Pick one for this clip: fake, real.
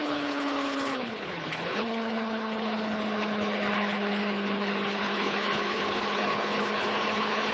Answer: fake